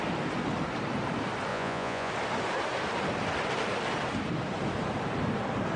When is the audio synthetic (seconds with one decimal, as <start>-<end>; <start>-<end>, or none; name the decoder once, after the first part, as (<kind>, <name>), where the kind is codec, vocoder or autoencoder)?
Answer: 1.5-2.1 (vocoder, Vocos)